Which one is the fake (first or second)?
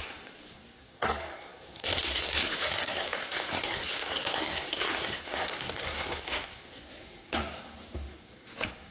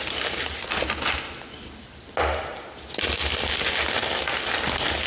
first